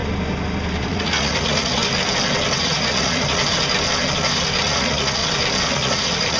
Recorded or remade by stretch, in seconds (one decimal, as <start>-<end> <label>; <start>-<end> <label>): 0.0-0.9 recorded; 0.9-1.8 remade; 1.8-2.6 recorded; 2.6-3.4 remade; 3.4-4.6 recorded; 4.6-5.2 remade; 5.2-5.7 recorded; 5.7-6.4 remade

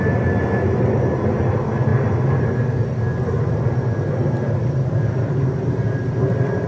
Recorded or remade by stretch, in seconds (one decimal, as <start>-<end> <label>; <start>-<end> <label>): 0.0-6.7 recorded

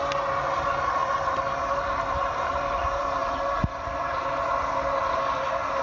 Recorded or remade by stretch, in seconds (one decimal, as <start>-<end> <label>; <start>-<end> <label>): 0.0-5.8 recorded

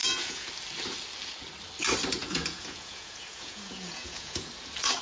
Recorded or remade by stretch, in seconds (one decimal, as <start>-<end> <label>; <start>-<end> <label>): 0.0-0.5 remade; 0.5-2.2 recorded; 2.2-4.5 remade; 4.5-5.0 recorded